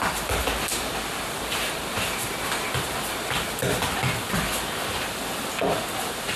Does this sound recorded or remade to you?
recorded